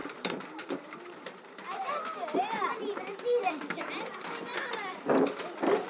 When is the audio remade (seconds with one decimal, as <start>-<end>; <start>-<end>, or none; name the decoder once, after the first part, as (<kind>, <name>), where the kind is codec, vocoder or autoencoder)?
0.0-3.5 (vocoder, BigVGAN v2)